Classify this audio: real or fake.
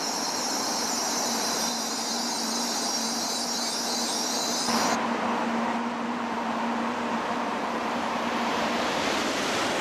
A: fake